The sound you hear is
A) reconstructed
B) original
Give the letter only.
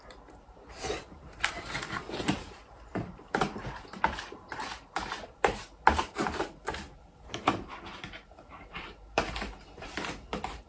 A